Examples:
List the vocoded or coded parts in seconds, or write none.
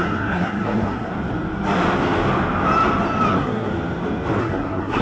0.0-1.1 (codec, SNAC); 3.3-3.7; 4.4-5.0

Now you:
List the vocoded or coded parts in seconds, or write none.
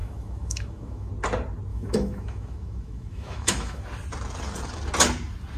0.0-1.1 (autoencoder, DAC-VAE); 1.7-3.8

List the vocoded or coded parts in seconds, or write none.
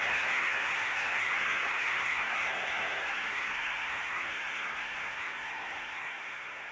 0.0-6.7 (codec, SNAC)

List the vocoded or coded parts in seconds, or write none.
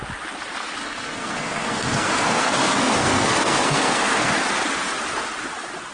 0.8-4.3 (codec, SNAC)